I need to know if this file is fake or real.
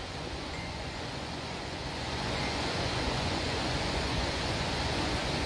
fake